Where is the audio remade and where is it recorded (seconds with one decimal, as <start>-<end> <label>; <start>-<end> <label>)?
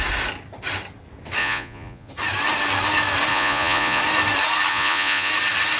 0.0-1.4 recorded; 1.4-2.1 remade; 2.1-3.3 recorded; 3.3-4.0 remade; 4.0-4.7 recorded; 4.7-5.3 remade; 5.3-5.8 recorded